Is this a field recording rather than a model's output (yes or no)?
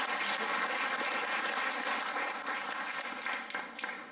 yes